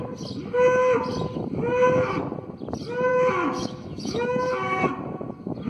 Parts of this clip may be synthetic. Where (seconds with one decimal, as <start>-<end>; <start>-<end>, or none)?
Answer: 3.1-4.9